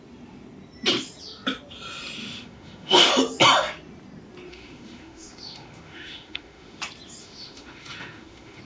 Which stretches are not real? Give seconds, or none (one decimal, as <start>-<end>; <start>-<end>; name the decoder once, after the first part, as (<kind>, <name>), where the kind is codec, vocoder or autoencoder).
2.2-3.1 (autoencoder, DAC-VAE); 4.5-6.8; 7.2-8.6